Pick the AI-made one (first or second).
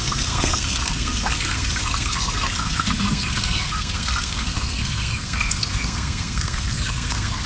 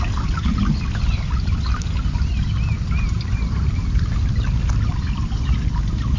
first